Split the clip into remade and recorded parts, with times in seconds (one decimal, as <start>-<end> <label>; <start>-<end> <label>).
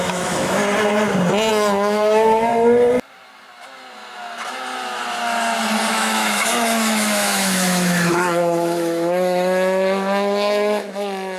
0.0-0.6 remade; 0.6-1.5 recorded; 1.5-2.5 remade; 2.5-5.9 recorded; 5.9-11.4 remade